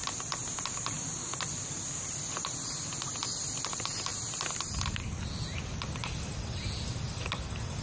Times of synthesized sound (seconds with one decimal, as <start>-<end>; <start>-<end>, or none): none